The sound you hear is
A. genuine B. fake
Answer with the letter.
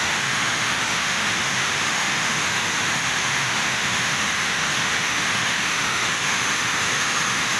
B